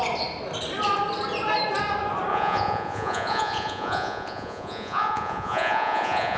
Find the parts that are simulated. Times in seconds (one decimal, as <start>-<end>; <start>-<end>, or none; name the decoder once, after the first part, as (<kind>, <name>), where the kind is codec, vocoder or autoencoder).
2.3-6.4 (vocoder, Vocos)